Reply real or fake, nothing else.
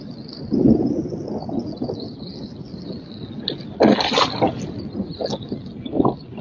real